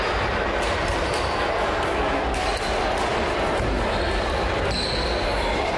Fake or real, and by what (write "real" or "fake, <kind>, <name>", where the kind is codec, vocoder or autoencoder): real